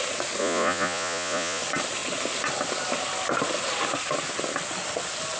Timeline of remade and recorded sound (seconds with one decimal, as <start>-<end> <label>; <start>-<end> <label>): 0.0-0.4 recorded; 0.4-1.6 remade; 1.6-5.4 recorded

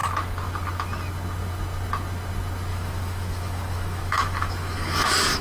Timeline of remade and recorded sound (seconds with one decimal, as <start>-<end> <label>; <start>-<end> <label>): 0.0-2.7 recorded; 2.7-5.4 remade

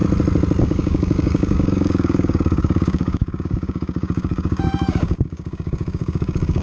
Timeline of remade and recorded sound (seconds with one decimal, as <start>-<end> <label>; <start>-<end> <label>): 0.0-0.6 recorded; 0.6-6.6 remade

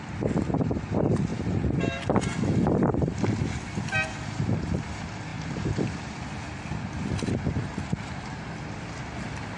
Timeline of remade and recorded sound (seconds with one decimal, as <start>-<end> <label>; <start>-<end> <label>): 0.0-1.3 recorded; 1.3-3.3 remade; 3.3-5.3 recorded; 5.3-6.6 remade; 6.6-9.6 recorded

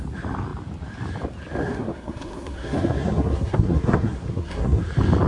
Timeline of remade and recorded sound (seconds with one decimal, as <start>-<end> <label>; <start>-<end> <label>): 0.0-1.6 recorded; 1.6-4.8 remade; 4.8-5.3 recorded

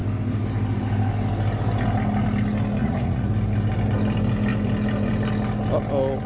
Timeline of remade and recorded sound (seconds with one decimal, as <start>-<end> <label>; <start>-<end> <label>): 0.0-2.8 recorded; 2.8-3.3 remade; 3.3-6.3 recorded